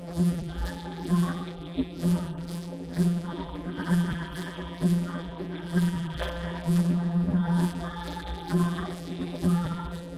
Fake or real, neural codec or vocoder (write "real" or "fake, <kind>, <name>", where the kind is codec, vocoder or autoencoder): fake, vocoder, BigVGAN v2